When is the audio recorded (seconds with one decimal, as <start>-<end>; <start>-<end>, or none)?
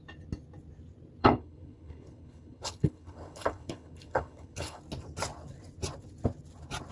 0.0-1.2; 4.8-6.9